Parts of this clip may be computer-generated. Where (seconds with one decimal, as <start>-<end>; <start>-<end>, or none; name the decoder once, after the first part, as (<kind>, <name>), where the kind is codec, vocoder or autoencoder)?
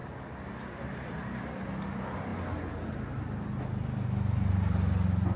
none